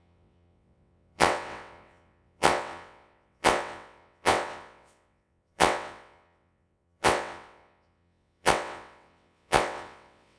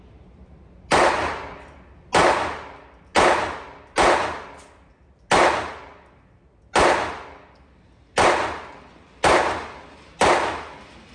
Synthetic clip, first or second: first